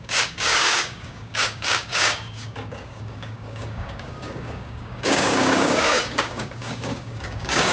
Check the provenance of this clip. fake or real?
fake